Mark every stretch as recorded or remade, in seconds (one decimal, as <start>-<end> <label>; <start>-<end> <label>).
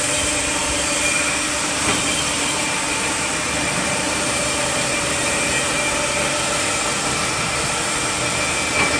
0.0-0.6 recorded; 0.6-5.5 remade; 5.5-9.0 recorded